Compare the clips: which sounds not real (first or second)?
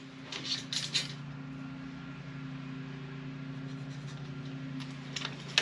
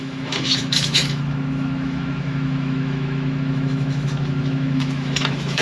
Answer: second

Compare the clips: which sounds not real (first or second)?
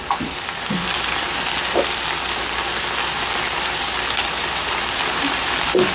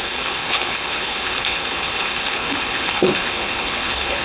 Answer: second